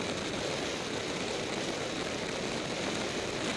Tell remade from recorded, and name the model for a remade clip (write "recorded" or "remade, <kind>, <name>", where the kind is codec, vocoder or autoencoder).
recorded